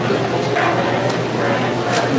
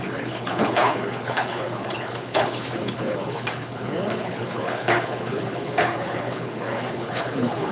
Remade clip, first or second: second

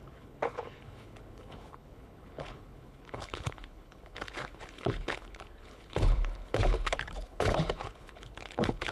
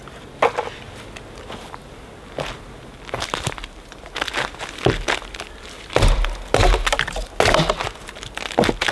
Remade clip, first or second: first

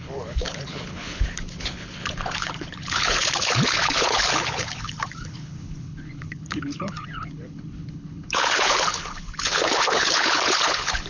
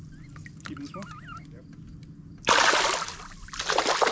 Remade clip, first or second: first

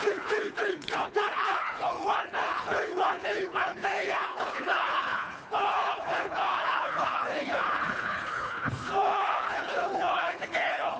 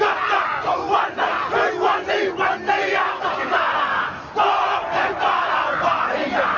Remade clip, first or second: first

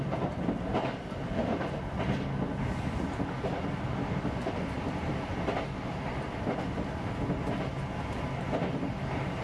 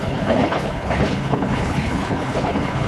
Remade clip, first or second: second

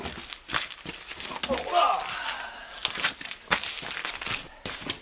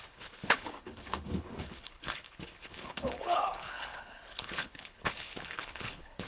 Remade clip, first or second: second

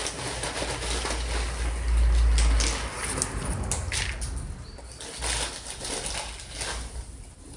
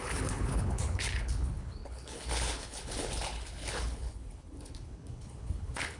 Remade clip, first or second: second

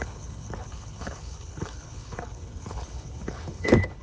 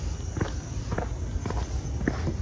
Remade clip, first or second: first